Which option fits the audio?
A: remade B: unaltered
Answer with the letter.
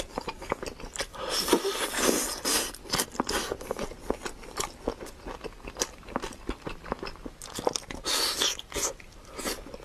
B